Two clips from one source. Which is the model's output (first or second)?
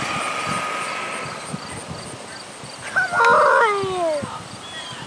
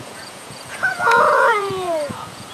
second